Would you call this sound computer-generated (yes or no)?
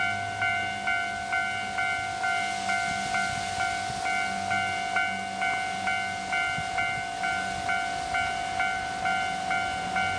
no